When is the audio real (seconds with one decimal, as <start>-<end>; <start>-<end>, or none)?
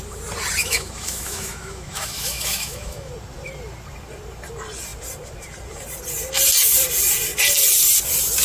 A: 0.0-0.6; 3.1-8.4